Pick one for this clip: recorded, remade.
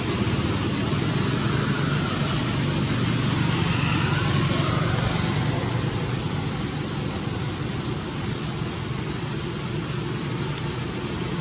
recorded